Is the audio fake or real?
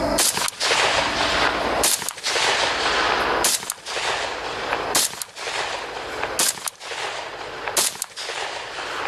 real